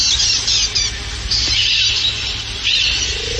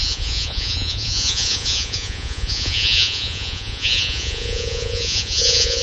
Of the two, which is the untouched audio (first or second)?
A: first